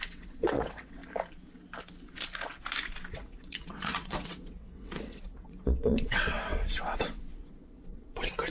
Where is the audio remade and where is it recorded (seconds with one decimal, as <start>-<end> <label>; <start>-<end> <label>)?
0.0-1.0 remade; 1.0-3.1 recorded; 3.1-8.5 remade